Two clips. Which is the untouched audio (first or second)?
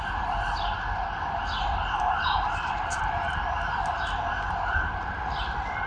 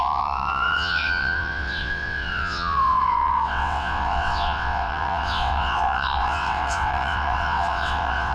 first